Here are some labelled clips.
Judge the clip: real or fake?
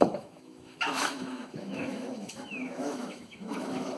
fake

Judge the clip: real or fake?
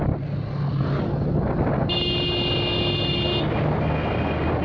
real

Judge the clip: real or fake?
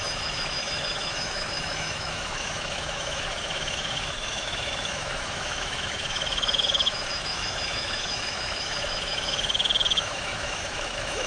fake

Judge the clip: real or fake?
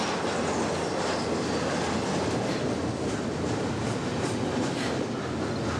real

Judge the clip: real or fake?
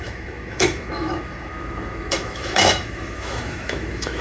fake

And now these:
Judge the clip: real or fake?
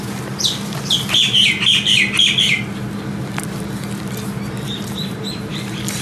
real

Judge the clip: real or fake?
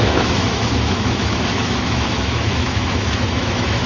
fake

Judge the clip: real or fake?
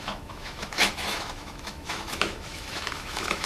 fake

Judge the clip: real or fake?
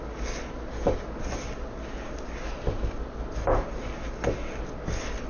real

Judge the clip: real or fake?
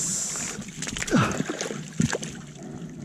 real